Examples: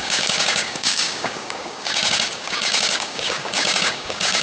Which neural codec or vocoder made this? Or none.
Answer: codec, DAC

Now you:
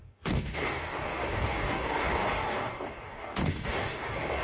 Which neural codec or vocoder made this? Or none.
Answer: codec, DAC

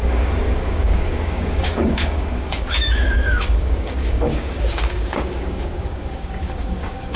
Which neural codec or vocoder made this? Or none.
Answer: codec, DAC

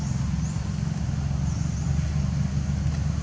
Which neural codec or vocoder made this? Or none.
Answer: none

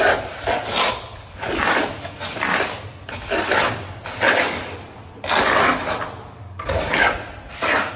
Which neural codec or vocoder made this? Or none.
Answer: none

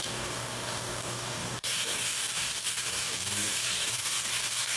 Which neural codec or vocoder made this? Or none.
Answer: codec, DAC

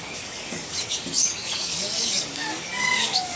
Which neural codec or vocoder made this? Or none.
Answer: codec, DAC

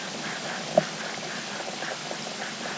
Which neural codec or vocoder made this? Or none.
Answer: none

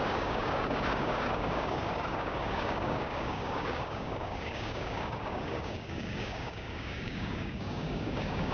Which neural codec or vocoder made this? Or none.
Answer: codec, DAC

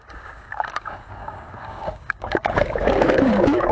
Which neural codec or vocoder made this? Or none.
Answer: codec, DAC